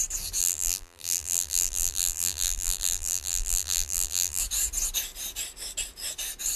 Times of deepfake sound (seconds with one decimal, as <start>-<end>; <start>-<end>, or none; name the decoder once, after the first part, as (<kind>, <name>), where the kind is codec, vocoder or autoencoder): 0.4-4.4 (vocoder, BigVGAN v2)